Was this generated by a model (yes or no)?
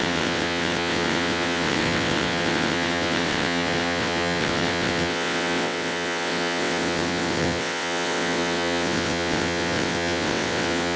yes